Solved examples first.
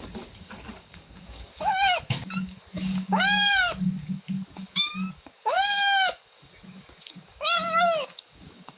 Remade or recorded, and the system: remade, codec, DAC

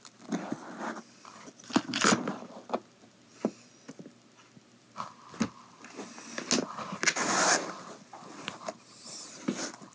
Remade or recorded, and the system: recorded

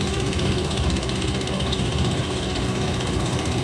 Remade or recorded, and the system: remade, codec, DAC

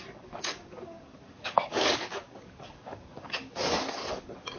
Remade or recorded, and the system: remade, codec, DAC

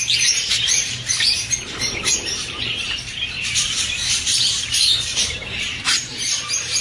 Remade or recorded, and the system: remade, vocoder, BigVGAN v2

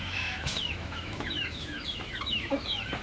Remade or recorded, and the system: remade, autoencoder, DAC-VAE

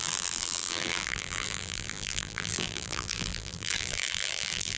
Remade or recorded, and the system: remade, vocoder, BigVGAN v2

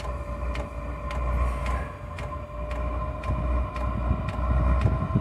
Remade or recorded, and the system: recorded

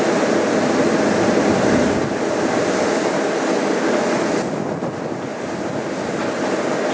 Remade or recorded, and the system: recorded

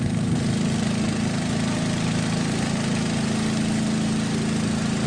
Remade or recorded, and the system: recorded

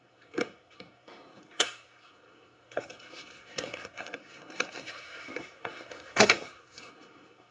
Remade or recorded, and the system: remade, codec, SNAC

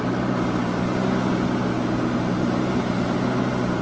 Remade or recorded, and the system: recorded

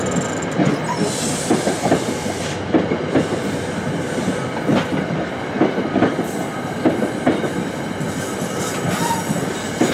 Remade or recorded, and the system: remade, vocoder, BigVGAN v2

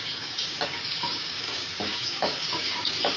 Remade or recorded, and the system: remade, codec, DAC